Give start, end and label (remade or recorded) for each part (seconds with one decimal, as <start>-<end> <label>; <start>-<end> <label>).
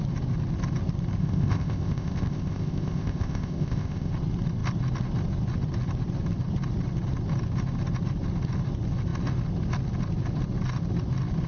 0.0-1.2 recorded; 1.2-4.1 remade; 4.1-11.5 recorded